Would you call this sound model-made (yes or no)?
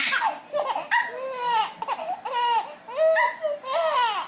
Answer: no